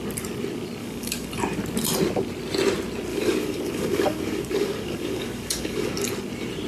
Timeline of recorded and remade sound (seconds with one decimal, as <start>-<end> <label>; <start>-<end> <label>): 0.0-0.8 recorded; 0.8-1.3 remade; 1.3-3.1 recorded; 3.1-5.9 remade; 5.9-6.7 recorded